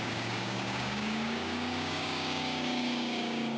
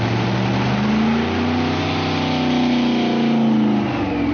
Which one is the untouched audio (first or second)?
second